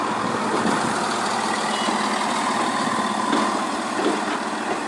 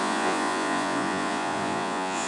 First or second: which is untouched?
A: first